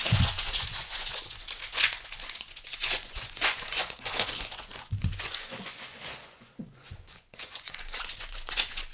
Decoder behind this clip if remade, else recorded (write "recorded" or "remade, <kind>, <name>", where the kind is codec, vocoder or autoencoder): remade, vocoder, Vocos